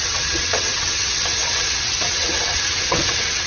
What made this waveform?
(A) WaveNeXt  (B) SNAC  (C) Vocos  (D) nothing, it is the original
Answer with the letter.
A